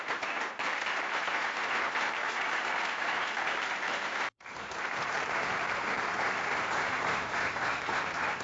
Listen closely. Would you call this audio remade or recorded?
remade